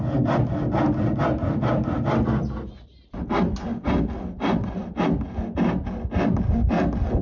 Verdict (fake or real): real